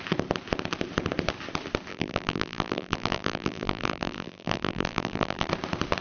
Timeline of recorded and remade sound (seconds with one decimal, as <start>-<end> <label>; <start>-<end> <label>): 0.0-1.9 recorded; 1.9-5.5 remade; 5.5-6.0 recorded